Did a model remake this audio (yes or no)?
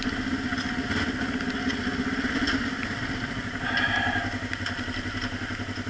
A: no